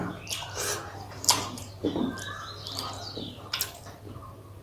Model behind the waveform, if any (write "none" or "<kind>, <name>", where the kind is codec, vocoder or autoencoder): none